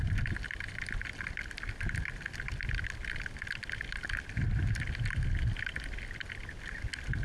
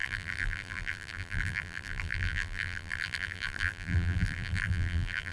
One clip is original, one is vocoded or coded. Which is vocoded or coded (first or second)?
second